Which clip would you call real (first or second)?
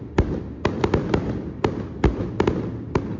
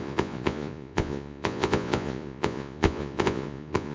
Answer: first